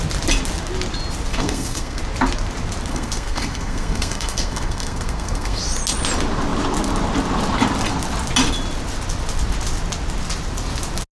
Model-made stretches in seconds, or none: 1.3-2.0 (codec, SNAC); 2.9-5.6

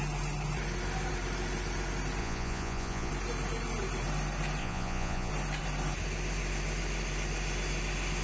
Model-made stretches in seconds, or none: 2.2-3.1 (vocoder, Vocos); 4.6-5.3

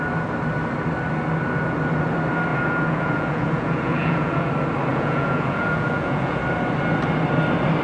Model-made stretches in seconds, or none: 2.5-4.5 (vocoder, Vocos); 4.9-6.4

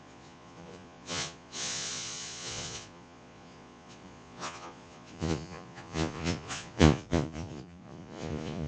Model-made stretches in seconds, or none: 0.0-8.7 (vocoder, Vocos)

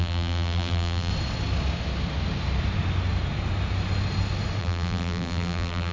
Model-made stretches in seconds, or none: 0.0-1.1 (vocoder, BigVGAN v2); 4.6-5.9

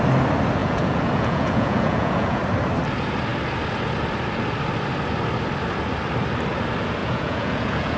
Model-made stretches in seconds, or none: 0.6-2.4 (vocoder, Vocos); 7.0-8.0

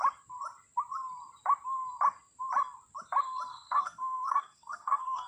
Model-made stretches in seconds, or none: 3.5-5.3 (codec, SNAC)

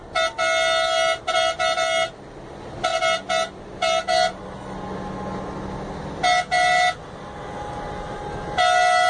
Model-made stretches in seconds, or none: none